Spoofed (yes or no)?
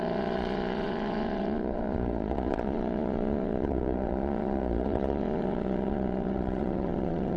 yes